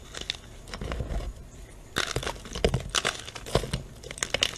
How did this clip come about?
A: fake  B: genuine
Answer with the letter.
B